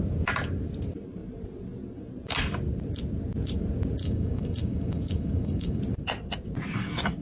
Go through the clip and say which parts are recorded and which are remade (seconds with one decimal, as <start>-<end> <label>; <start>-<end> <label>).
0.0-4.0 recorded; 4.0-5.8 remade; 5.8-7.2 recorded